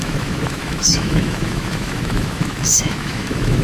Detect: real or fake fake